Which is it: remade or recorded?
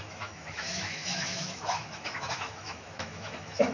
remade